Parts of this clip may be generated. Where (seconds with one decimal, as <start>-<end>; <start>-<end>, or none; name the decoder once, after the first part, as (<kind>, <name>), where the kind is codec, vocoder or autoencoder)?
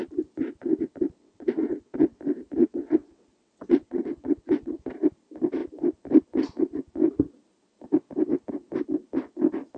1.2-2.2 (vocoder, WaveNeXt); 2.6-4.9